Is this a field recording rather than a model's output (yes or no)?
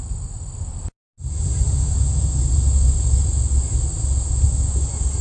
yes